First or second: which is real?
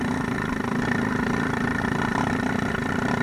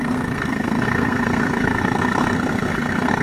first